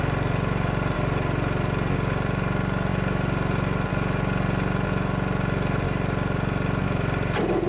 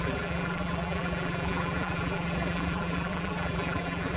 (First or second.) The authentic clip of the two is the first